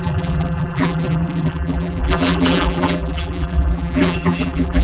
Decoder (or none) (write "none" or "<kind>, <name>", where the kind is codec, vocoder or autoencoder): vocoder, BigVGAN v2